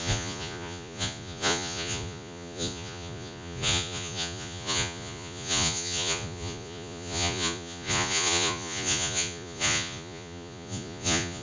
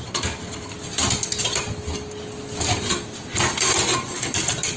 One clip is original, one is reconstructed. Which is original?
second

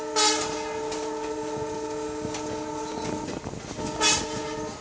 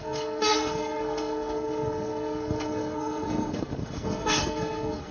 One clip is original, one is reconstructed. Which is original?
first